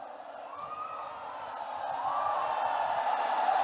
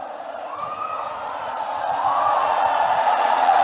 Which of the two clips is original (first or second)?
first